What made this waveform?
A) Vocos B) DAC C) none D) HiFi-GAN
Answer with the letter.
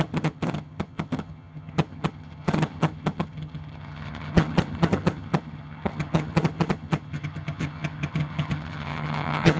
D